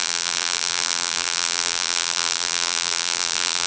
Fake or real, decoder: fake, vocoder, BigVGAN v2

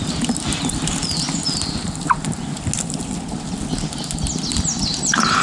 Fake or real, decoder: real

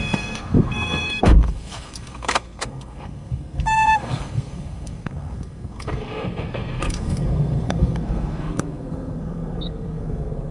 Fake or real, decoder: fake, codec, SNAC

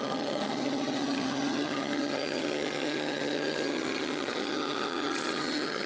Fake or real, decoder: fake, vocoder, HiFi-GAN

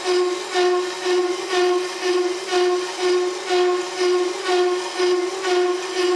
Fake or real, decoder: real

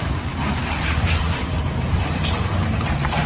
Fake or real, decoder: fake, vocoder, BigVGAN v2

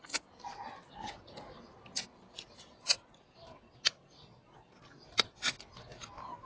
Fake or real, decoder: real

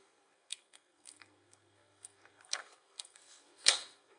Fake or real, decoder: fake, codec, SNAC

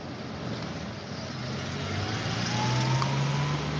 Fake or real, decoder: real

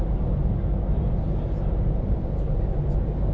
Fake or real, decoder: real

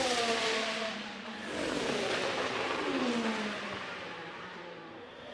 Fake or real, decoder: fake, vocoder, BigVGAN v2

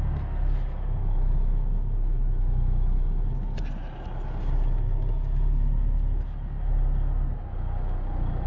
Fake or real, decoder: real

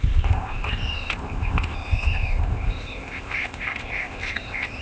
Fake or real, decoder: fake, codec, ZipCodec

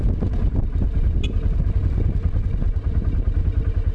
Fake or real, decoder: real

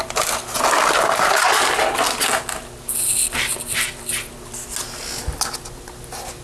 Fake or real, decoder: real